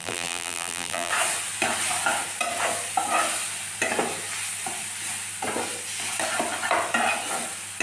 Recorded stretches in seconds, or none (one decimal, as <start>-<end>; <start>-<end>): 1.1-7.8